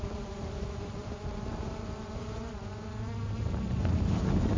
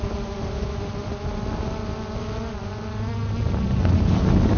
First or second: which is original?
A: second